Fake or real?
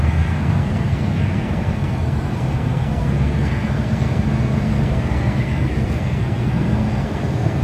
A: fake